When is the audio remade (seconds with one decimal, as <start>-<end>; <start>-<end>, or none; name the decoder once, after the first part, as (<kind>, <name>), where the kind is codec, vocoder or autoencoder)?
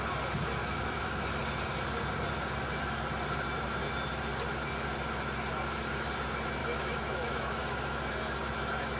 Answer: 0.6-1.2 (autoencoder, DAC-VAE); 6.6-8.1